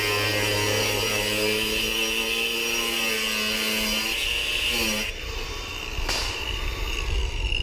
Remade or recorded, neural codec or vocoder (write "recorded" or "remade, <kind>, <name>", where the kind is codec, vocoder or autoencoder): recorded